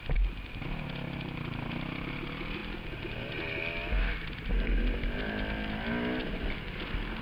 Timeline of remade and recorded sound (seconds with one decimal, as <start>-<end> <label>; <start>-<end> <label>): 0.0-7.2 recorded